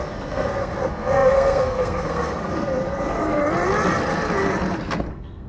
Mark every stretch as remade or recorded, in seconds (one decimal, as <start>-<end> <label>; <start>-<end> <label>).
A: 0.0-3.4 remade; 3.4-5.1 recorded; 5.1-5.5 remade